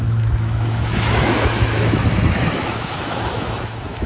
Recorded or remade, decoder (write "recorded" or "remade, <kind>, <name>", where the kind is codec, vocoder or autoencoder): remade, autoencoder, DAC-VAE